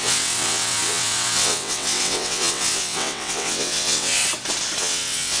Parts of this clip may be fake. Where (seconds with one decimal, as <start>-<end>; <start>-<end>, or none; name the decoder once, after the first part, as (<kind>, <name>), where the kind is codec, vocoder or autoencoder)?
0.0-4.2 (vocoder, WaveNeXt); 4.8-5.4